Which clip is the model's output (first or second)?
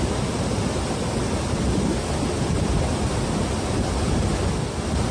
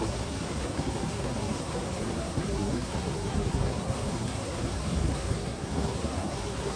second